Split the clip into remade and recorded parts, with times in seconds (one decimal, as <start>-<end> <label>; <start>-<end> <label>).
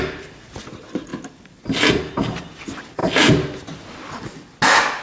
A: 0.0-5.0 recorded